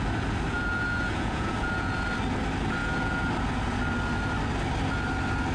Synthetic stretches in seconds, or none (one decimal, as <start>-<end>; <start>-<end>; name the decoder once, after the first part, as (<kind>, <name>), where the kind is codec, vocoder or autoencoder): 0.5-1.9 (vocoder, Vocos); 2.8-3.3